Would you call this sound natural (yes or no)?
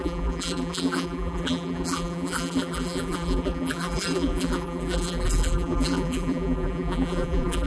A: no